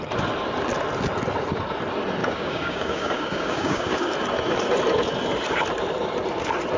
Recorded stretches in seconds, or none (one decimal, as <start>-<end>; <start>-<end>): 0.0-2.2; 4.1-6.8